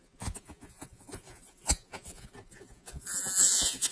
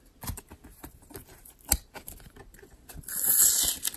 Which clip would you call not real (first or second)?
first